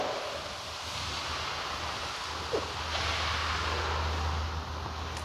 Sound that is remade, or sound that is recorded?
recorded